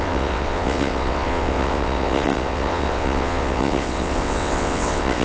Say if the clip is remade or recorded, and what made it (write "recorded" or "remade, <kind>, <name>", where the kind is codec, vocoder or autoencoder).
remade, vocoder, WaveNeXt